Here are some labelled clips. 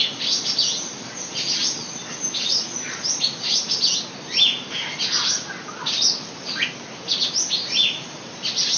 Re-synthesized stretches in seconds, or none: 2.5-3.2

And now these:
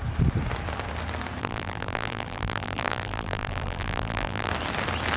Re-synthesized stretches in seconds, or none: 1.4-4.5

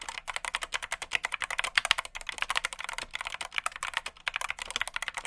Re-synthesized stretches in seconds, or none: none

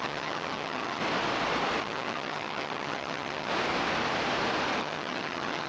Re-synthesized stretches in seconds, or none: 0.0-1.0; 1.8-3.5; 4.8-5.7

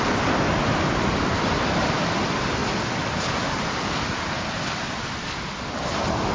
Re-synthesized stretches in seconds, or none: 0.0-2.6; 3.3-6.3

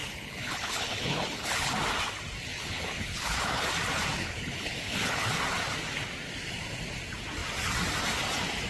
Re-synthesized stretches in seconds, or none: 0.0-1.7; 2.5-3.7; 4.2-5.4